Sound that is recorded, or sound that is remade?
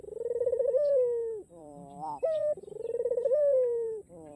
remade